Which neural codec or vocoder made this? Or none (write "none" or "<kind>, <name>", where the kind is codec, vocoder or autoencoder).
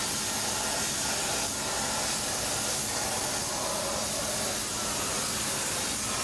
none